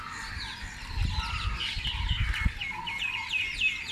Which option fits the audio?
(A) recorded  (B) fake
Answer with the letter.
A